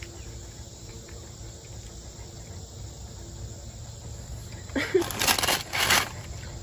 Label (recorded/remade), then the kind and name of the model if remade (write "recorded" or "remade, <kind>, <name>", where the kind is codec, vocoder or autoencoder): recorded